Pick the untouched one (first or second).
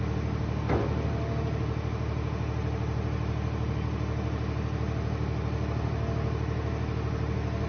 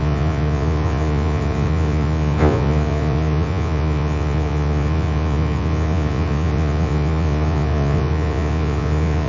first